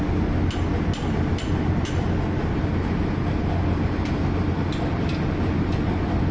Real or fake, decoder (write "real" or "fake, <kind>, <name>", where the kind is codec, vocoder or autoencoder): real